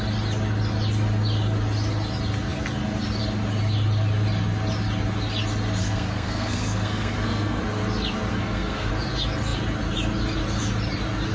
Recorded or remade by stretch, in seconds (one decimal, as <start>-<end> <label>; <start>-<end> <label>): 0.0-5.8 recorded; 5.8-7.6 remade; 7.6-8.3 recorded; 8.3-8.9 remade; 8.9-11.3 recorded